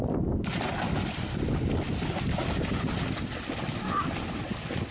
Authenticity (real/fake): real